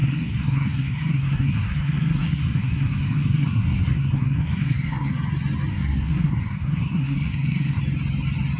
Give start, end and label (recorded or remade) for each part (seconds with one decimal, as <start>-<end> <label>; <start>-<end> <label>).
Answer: 0.0-5.1 remade; 5.1-5.7 recorded; 5.7-7.8 remade; 7.8-8.6 recorded